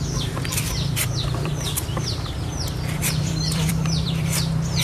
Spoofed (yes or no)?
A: yes